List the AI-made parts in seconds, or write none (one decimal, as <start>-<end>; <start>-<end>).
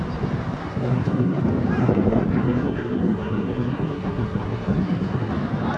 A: 0.6-1.4; 1.8-5.3